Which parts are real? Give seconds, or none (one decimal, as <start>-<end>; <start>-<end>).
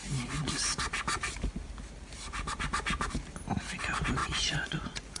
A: 0.0-4.2